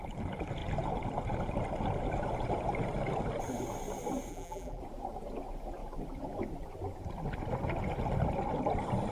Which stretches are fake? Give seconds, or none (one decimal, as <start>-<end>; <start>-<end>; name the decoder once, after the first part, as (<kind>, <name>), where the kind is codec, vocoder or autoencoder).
4.3-4.8 (vocoder, BigVGAN v2)